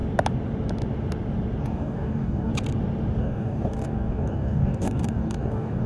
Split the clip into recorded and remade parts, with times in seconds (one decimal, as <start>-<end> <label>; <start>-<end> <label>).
0.0-1.6 recorded; 1.6-2.5 remade; 2.5-3.2 recorded; 3.2-5.9 remade